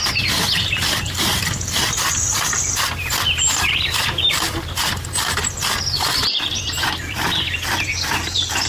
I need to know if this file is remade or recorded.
remade